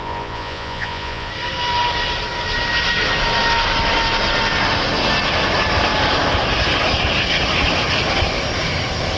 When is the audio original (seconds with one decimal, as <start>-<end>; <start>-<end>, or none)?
1.3-9.2